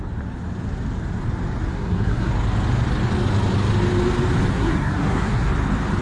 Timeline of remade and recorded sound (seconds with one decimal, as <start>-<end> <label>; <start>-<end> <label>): 0.0-1.7 recorded; 1.7-2.3 remade; 2.3-4.5 recorded; 4.5-5.5 remade; 5.5-6.0 recorded